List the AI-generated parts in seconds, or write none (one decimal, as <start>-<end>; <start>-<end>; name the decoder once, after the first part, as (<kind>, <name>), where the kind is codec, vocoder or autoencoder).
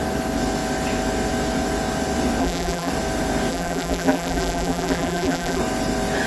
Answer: 2.4-2.9 (vocoder, BigVGAN v2); 3.5-5.6